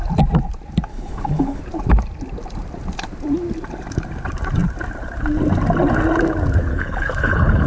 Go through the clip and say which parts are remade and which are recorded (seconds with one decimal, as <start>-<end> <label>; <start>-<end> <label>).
0.0-0.9 recorded; 0.9-1.6 remade; 1.6-6.7 recorded; 6.7-7.7 remade